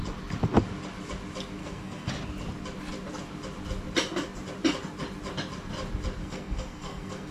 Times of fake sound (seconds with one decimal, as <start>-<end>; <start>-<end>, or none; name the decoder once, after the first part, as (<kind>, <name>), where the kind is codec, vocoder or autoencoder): 1.6-2.1 (codec, SNAC); 6.2-7.3